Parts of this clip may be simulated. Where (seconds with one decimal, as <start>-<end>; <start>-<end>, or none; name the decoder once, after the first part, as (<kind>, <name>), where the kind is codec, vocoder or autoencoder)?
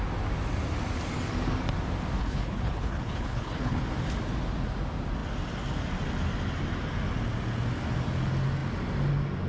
2.2-3.8 (codec, HILCodec)